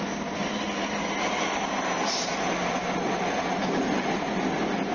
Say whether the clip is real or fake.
real